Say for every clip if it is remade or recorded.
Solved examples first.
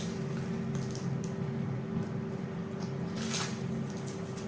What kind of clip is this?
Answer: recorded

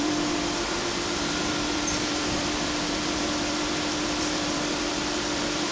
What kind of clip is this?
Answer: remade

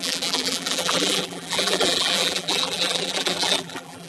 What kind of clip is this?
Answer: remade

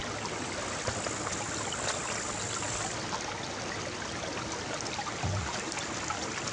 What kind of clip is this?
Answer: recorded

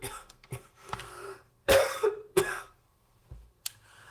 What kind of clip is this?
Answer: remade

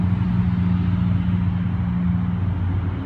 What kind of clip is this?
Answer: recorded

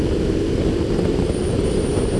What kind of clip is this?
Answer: recorded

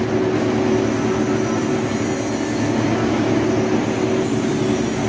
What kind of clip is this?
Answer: recorded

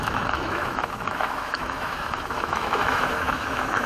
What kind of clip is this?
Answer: remade